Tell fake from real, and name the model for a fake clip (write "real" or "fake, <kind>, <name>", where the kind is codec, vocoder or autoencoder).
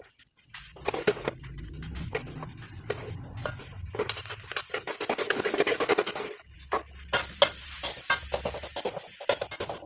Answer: real